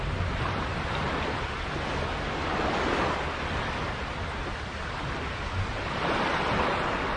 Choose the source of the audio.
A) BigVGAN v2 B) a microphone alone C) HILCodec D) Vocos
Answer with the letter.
B